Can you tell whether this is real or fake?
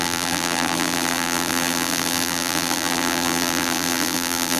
fake